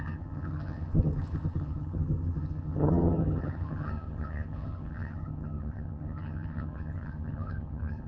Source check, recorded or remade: remade